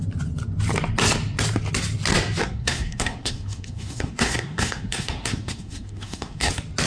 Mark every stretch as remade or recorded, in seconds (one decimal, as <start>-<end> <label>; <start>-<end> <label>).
0.0-2.4 recorded; 2.4-6.5 remade; 6.5-6.9 recorded

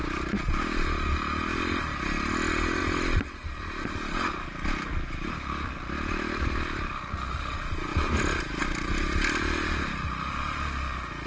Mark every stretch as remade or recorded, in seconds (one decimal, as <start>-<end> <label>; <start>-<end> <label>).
0.0-2.8 recorded; 2.8-7.1 remade; 7.1-7.9 recorded; 7.9-8.6 remade; 8.6-11.3 recorded

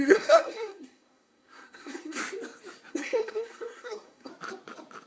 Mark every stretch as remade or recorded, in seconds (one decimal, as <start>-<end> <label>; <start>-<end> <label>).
0.0-2.2 remade; 2.2-2.9 recorded; 2.9-4.3 remade; 4.3-5.1 recorded

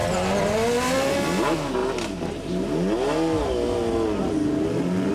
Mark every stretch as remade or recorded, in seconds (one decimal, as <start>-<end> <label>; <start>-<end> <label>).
0.0-5.1 recorded